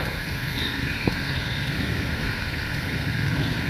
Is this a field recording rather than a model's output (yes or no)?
no